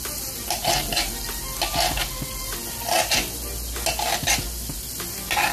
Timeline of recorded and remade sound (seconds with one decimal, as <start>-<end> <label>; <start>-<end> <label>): 0.0-5.5 recorded